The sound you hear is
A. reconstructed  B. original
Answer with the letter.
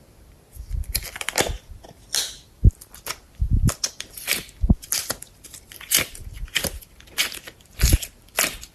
A